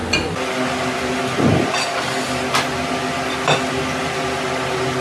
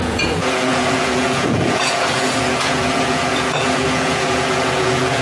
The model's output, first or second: second